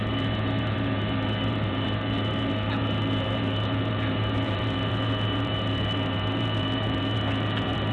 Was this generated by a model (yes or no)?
yes